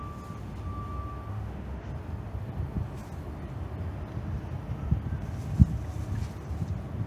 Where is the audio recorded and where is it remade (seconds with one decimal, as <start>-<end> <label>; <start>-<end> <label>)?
0.0-1.3 recorded; 1.3-1.9 remade; 1.9-7.1 recorded